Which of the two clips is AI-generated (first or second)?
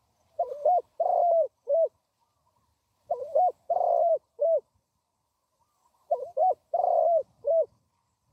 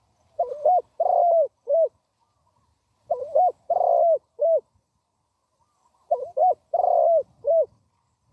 first